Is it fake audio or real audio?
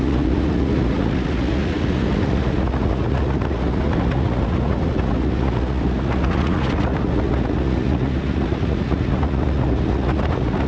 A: fake